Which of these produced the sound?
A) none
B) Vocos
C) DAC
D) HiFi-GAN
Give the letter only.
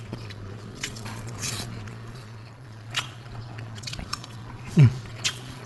B